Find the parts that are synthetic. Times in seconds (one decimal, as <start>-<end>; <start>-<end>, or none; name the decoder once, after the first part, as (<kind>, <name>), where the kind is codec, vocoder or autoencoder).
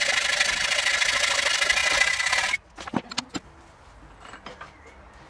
none